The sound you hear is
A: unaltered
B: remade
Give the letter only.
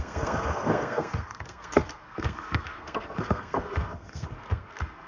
B